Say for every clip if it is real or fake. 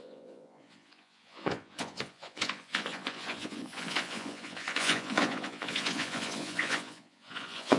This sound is fake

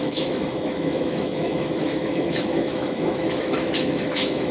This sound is fake